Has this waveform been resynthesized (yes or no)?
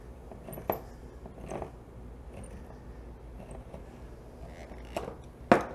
no